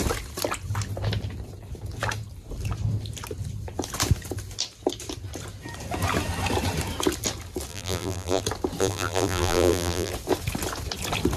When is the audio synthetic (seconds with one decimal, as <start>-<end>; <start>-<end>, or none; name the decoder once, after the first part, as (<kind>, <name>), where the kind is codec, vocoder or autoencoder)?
7.7-8.4 (vocoder, BigVGAN v2); 8.8-10.1